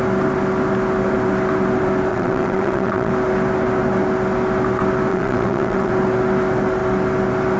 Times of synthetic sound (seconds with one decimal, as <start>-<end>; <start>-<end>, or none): 2.1-3.1; 5.1-5.9

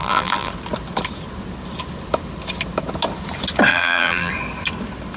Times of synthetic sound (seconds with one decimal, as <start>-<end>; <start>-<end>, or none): 0.0-0.5; 3.7-4.3

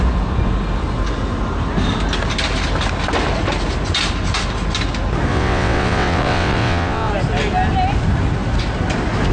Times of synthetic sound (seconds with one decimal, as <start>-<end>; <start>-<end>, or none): 5.3-7.1

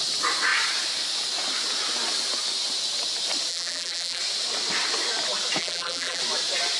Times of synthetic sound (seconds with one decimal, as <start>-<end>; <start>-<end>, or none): 3.5-4.2; 5.6-6.2

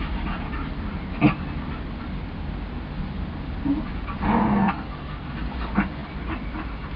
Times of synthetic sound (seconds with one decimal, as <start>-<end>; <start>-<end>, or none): 4.4-5.3

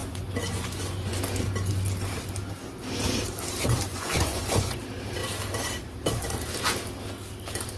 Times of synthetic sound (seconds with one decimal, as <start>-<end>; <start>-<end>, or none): 0.0-1.2; 3.9-4.8

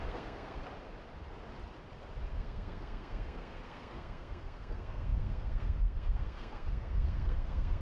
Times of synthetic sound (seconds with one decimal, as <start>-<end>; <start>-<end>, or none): 0.0-0.6; 2.3-7.8